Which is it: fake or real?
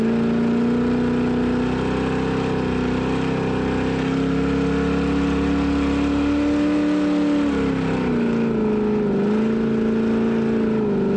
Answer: real